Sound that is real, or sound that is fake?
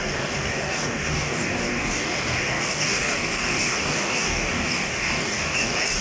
fake